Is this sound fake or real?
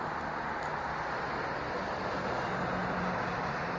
real